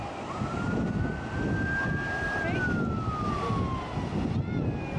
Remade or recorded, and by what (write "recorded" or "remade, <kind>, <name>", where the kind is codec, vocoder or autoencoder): recorded